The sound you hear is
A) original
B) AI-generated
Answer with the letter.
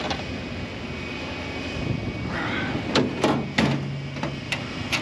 A